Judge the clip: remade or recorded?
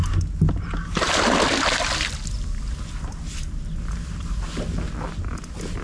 recorded